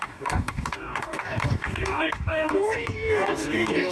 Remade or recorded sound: remade